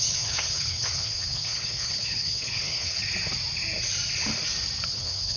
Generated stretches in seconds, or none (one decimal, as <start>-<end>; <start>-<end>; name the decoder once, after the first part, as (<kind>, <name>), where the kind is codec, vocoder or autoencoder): 0.0-3.0 (codec, HILCodec); 4.9-5.4